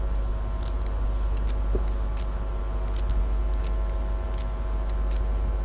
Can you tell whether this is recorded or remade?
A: recorded